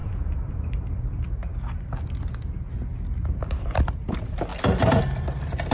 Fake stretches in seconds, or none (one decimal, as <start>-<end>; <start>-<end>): 0.0-1.4; 3.6-4.5; 5.0-5.7